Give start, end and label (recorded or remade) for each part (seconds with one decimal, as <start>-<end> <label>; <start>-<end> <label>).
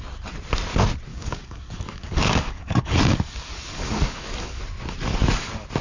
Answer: 0.0-1.1 recorded; 1.1-4.6 remade; 4.6-5.8 recorded